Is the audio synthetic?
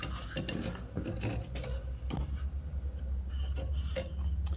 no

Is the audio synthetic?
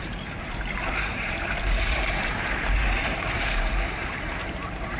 yes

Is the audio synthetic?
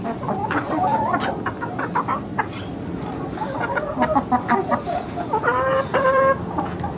yes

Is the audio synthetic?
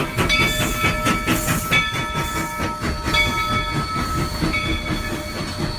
no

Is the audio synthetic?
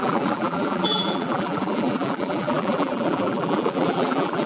yes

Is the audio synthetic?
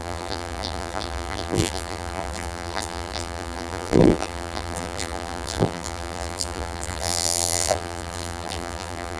yes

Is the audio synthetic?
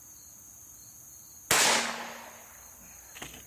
no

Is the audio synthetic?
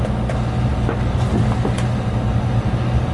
no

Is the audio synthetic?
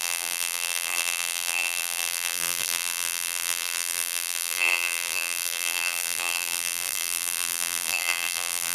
yes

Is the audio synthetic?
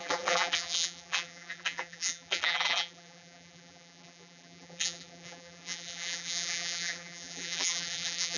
yes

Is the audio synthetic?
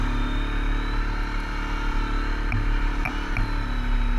no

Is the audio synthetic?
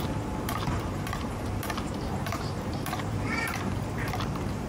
yes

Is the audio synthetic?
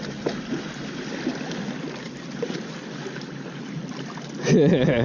no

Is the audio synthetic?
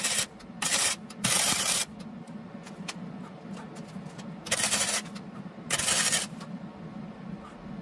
no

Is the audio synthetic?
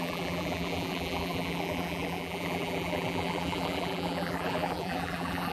yes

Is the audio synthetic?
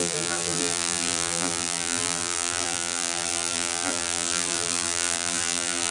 yes